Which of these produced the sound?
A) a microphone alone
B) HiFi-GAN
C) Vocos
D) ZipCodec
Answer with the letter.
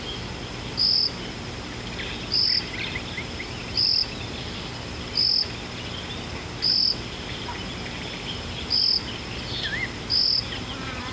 A